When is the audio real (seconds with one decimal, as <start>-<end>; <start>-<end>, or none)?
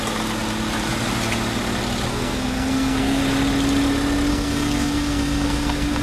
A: 0.0-2.1; 3.2-4.3